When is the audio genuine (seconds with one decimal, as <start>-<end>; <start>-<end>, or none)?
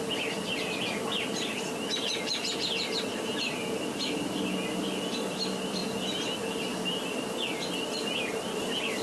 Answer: 0.0-9.0